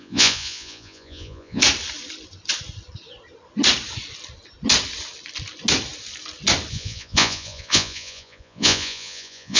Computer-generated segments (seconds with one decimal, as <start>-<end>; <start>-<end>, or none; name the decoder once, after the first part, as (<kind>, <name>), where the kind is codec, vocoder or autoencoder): 0.0-1.6 (vocoder, Vocos); 6.7-9.6

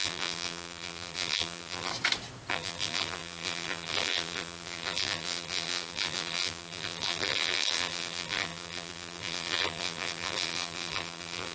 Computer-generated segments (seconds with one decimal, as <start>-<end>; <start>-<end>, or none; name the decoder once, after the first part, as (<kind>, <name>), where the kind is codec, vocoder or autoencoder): 0.0-1.9 (vocoder, BigVGAN v2); 2.5-11.5